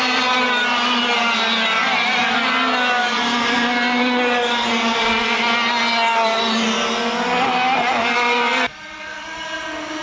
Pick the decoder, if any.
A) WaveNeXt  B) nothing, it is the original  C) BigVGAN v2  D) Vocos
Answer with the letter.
B